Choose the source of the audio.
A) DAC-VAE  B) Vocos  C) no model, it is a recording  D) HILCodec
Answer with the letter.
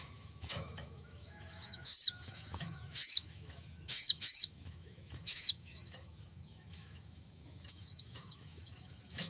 A